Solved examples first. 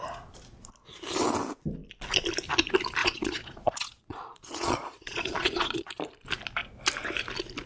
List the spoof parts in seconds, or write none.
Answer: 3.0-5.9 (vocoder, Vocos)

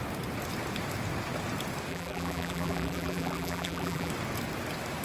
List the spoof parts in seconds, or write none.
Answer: 1.9-4.1 (vocoder, BigVGAN v2)

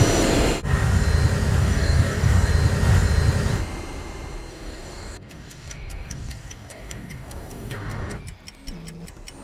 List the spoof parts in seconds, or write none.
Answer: 1.6-2.5 (codec, DAC); 4.5-8.2